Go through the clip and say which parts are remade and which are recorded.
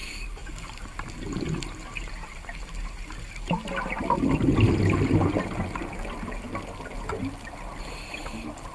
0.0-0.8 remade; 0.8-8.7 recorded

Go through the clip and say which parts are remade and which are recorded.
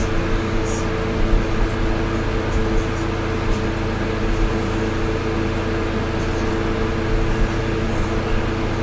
0.0-8.8 recorded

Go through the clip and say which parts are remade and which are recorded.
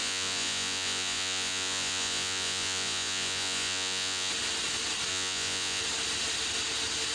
0.0-4.3 remade; 4.3-5.1 recorded; 5.1-5.8 remade; 5.8-7.1 recorded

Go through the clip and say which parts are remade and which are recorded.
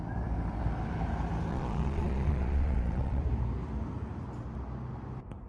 0.0-1.5 recorded; 1.5-3.2 remade; 3.2-5.5 recorded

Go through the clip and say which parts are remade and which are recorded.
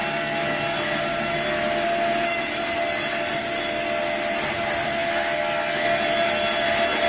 0.0-7.1 recorded